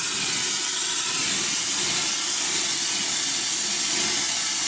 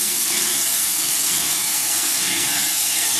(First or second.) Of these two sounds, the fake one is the second